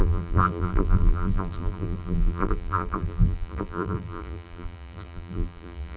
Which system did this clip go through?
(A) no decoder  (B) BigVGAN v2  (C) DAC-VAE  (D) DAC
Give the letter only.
B